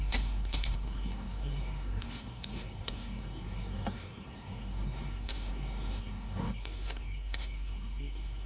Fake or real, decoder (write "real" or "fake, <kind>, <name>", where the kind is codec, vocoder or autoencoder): fake, codec, SNAC